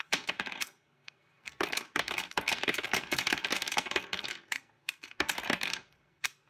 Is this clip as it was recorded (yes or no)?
no